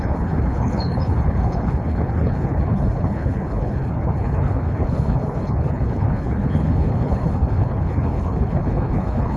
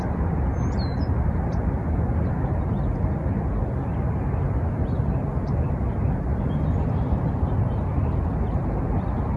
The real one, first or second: second